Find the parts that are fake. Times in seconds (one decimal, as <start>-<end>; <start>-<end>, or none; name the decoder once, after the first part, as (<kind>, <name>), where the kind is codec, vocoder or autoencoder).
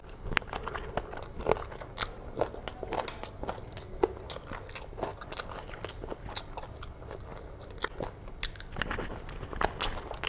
7.3-7.9 (vocoder, BigVGAN v2)